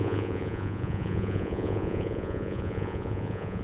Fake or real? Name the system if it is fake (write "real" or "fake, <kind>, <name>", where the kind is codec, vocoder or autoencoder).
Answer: fake, vocoder, Vocos